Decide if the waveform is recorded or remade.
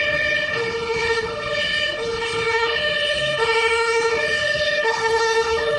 remade